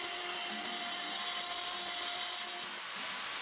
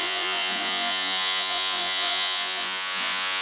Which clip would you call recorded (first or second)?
first